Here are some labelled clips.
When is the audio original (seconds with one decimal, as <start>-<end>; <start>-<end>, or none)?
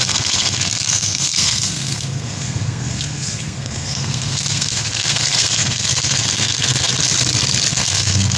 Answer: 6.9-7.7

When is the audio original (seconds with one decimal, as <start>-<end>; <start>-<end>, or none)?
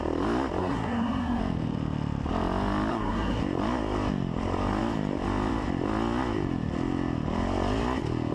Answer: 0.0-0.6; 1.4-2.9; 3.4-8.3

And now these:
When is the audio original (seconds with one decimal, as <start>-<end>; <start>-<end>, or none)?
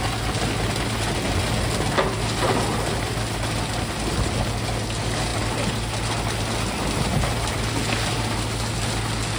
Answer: 0.0-9.4